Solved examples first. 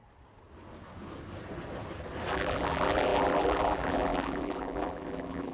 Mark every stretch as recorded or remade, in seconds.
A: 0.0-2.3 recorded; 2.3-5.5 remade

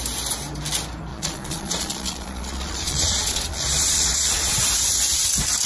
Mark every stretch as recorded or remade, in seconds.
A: 0.0-1.1 recorded; 1.1-4.5 remade; 4.5-5.7 recorded

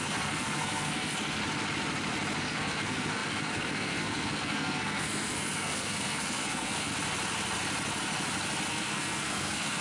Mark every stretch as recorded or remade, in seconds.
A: 0.0-1.4 remade; 1.4-2.4 recorded; 2.4-6.9 remade; 6.9-8.7 recorded; 8.7-9.8 remade

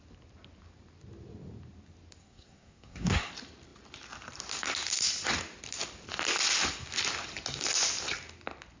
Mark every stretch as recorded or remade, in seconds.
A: 0.0-2.2 recorded; 2.2-3.3 remade; 3.3-8.8 recorded

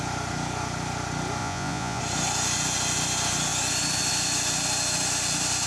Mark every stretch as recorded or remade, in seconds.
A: 0.0-1.4 recorded; 1.4-2.0 remade; 2.0-5.7 recorded